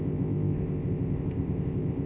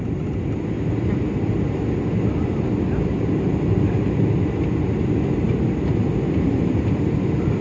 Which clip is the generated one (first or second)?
first